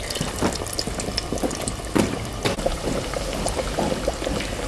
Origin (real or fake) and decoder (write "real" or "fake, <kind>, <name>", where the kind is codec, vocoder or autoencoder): real